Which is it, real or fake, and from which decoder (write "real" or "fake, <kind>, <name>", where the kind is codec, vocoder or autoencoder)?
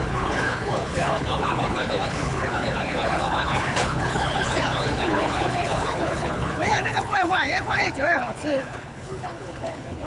fake, codec, HILCodec